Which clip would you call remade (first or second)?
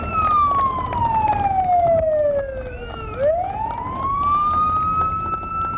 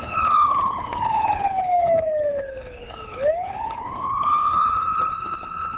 second